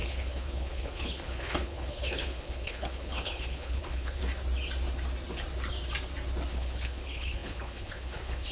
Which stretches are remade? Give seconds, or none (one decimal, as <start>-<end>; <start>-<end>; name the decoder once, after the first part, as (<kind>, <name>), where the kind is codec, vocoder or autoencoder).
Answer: 0.0-4.2 (codec, HILCodec); 6.5-8.5

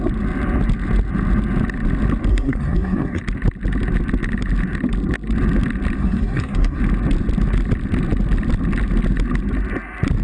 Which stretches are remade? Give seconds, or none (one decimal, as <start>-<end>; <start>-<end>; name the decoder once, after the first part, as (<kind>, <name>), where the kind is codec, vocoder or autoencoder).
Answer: 2.3-3.2 (codec, SNAC); 6.0-6.8

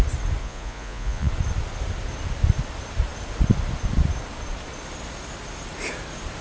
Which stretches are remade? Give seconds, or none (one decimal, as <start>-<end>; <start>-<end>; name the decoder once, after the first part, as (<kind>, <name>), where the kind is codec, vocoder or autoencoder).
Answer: 0.4-1.3 (vocoder, Vocos)

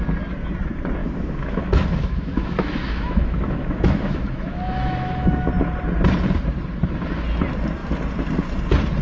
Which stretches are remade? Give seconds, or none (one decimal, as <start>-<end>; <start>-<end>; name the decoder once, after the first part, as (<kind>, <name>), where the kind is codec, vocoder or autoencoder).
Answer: 1.0-5.5 (autoencoder, DAC-VAE)